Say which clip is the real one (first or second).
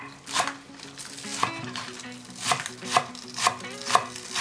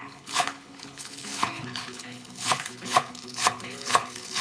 first